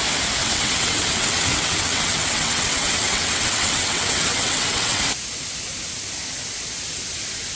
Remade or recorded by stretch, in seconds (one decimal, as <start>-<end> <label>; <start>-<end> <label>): 0.0-0.4 recorded; 0.4-5.0 remade; 5.0-7.6 recorded